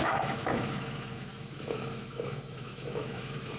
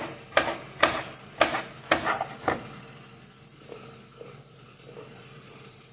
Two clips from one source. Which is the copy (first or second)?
first